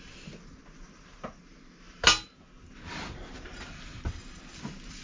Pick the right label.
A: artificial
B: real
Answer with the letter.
B